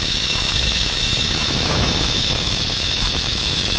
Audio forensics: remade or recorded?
remade